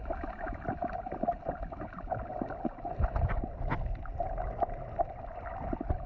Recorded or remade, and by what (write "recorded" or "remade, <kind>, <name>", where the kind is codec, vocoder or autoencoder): recorded